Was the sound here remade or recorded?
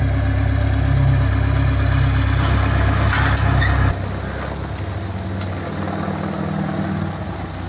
recorded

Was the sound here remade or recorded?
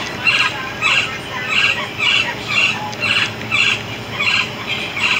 recorded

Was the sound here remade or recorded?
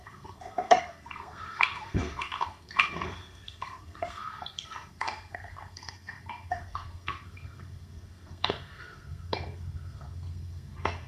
remade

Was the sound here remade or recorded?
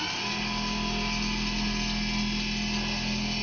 recorded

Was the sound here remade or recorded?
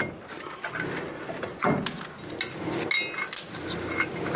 recorded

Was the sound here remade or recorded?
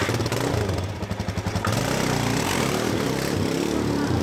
recorded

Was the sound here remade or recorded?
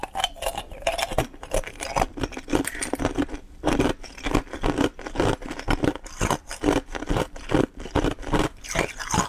remade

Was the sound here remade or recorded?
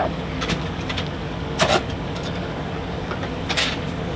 remade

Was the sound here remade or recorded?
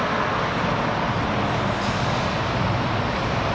recorded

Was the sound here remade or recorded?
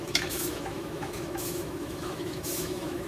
remade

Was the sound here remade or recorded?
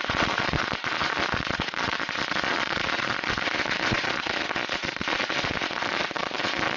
remade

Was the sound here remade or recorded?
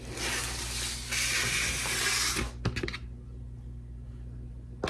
recorded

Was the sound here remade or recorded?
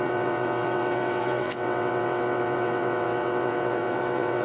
remade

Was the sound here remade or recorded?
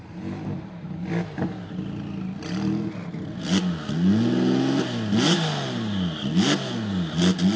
recorded